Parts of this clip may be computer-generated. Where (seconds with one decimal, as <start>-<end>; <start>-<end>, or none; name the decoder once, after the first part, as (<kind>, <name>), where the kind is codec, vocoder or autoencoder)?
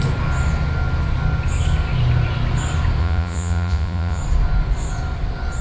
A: 3.0-4.2 (vocoder, Vocos)